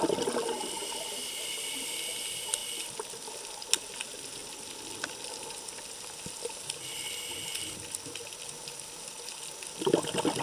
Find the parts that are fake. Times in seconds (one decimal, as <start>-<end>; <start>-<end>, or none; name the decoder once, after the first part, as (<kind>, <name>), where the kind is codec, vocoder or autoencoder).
none